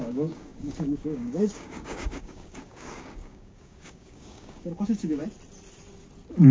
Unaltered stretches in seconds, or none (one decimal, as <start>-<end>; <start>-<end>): 5.2-6.5